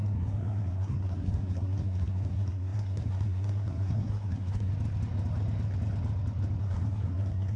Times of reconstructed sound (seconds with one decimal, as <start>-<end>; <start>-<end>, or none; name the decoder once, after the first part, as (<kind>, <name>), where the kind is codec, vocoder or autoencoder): 0.0-4.7 (codec, SNAC); 6.6-7.6